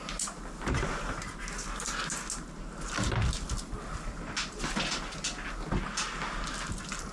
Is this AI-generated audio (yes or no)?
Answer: no